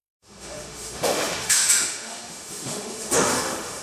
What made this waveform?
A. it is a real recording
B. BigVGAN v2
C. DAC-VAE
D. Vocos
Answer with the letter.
C